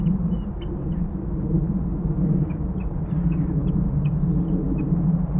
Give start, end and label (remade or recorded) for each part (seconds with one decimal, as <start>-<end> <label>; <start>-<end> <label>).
0.0-5.4 recorded